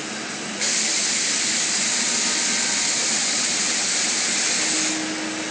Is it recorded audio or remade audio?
recorded